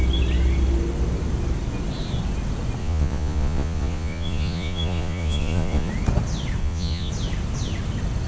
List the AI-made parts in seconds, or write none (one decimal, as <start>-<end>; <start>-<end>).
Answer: 2.8-5.9; 6.6-7.1

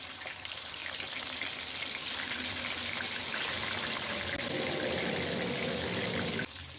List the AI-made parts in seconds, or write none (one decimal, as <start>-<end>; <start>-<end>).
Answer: none